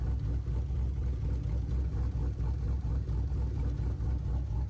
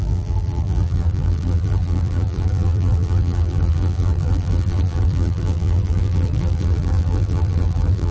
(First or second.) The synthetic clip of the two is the second